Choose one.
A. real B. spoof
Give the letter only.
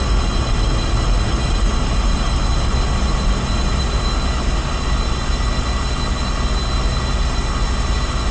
A